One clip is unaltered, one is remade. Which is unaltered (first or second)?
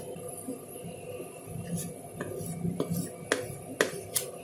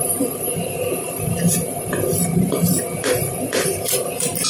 first